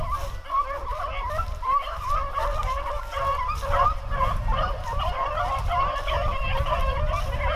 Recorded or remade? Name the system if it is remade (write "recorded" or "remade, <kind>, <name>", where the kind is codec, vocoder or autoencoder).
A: recorded